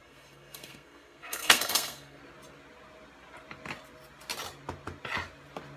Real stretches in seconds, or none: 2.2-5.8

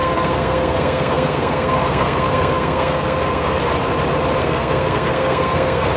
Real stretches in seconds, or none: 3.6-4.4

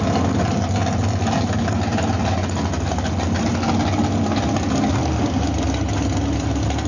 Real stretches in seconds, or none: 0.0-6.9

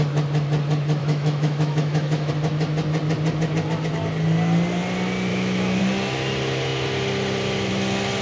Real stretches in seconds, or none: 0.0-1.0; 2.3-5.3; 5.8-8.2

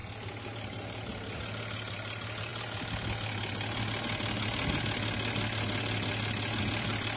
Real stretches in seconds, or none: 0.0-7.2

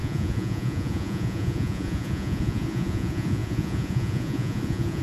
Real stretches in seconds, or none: none